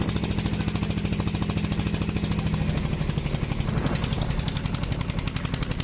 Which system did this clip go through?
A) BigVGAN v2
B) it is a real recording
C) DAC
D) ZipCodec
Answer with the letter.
B